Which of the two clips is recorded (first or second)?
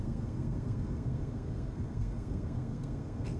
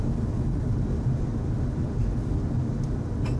second